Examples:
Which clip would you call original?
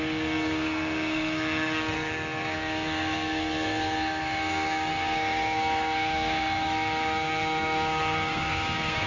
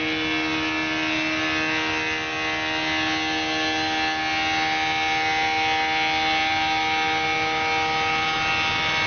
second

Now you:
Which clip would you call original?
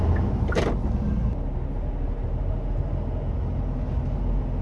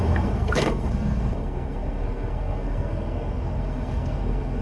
first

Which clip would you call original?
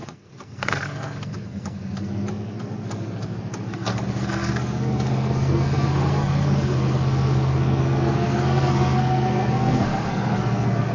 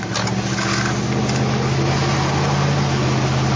second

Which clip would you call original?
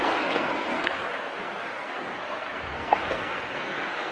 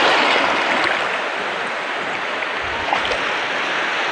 second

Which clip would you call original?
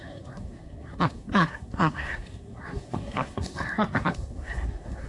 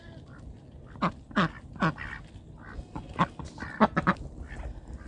second